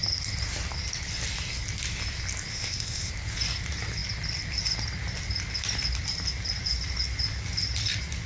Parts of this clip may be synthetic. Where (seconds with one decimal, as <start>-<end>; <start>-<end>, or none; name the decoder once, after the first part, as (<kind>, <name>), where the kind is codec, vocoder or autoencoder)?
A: 2.5-3.1 (codec, ZipCodec)